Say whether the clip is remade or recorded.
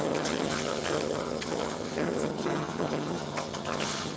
remade